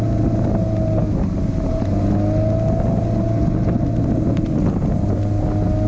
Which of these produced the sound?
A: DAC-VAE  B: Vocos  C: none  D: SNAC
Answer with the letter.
C